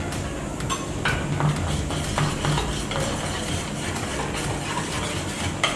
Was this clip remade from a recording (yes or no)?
no